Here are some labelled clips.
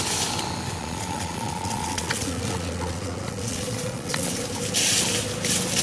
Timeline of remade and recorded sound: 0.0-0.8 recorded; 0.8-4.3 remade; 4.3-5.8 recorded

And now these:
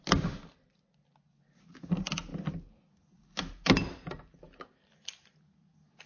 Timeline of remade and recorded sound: 0.0-6.1 recorded